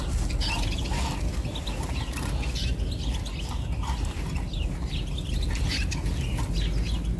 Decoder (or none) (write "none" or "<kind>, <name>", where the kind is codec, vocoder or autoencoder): none